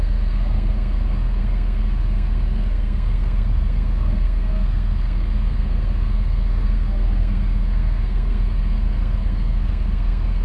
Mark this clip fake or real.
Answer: fake